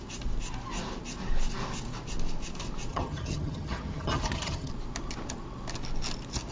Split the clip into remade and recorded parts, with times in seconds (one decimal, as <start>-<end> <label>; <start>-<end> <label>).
0.0-2.9 recorded; 2.9-4.7 remade; 4.7-6.5 recorded